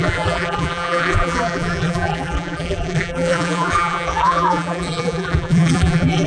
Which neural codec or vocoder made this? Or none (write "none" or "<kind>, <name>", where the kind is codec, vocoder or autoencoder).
vocoder, BigVGAN v2